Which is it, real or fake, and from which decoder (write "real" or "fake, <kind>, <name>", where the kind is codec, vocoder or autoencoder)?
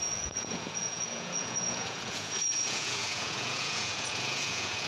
fake, vocoder, Vocos